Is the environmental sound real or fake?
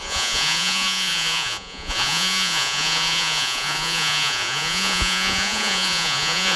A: fake